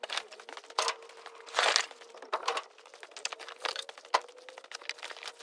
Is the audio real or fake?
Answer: real